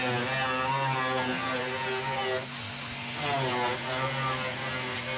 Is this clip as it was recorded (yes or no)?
yes